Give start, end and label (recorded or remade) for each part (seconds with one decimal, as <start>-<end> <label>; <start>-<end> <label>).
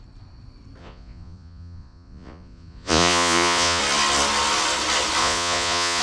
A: 0.0-0.8 recorded; 0.8-3.8 remade; 3.8-5.2 recorded; 5.2-6.0 remade